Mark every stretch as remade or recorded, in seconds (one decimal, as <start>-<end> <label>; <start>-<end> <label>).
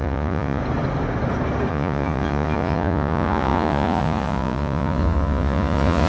0.0-0.6 remade; 0.6-1.7 recorded; 1.7-6.1 remade